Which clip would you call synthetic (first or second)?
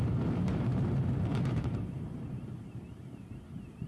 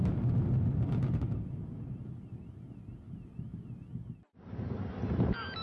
first